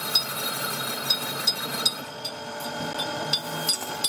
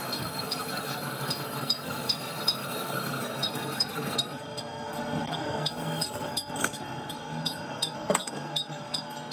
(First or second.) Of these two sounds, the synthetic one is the second